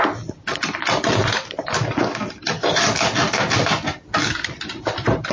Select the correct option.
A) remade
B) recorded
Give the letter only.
B